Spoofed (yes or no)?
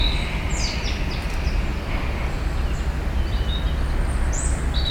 no